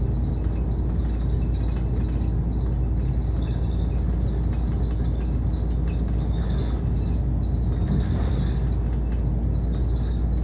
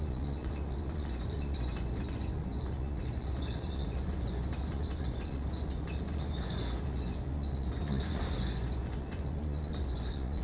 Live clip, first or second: first